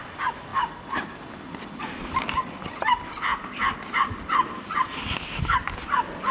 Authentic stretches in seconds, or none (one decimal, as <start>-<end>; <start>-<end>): 0.0-6.3

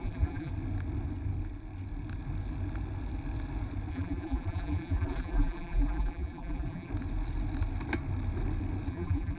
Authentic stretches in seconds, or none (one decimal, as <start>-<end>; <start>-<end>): 0.5-3.9; 6.9-8.9

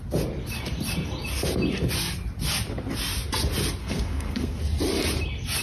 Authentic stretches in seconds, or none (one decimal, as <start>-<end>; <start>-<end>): 0.0-3.8; 4.6-5.6

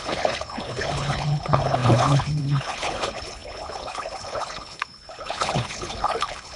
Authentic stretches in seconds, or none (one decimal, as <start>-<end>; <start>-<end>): none

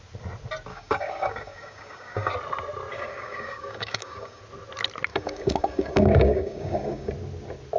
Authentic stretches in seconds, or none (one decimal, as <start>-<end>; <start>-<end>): 0.0-0.7; 2.3-2.9; 4.4-5.1; 7.1-7.8

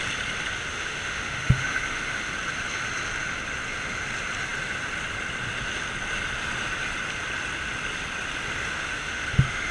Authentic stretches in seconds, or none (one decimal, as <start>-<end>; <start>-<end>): 0.0-0.7; 2.3-8.8

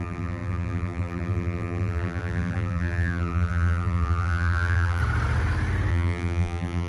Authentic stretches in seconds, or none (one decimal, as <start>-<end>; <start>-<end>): 5.0-5.9